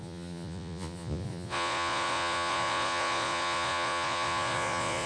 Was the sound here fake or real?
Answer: fake